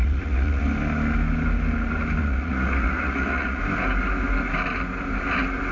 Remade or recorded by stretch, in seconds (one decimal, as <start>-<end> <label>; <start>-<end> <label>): 0.0-0.6 remade; 0.6-2.2 recorded; 2.2-3.6 remade; 3.6-5.7 recorded